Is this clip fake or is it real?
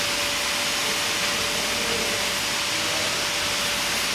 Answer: real